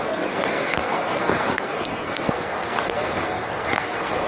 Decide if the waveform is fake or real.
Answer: fake